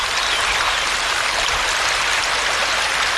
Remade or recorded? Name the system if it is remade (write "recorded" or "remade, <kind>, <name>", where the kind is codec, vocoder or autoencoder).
recorded